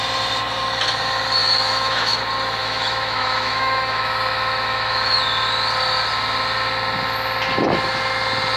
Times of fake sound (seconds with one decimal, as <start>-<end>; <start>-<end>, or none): 1.4-2.2; 2.6-5.2